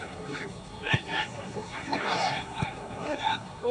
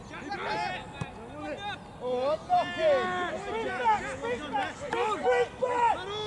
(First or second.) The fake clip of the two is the first